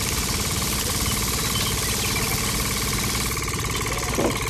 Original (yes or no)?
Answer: yes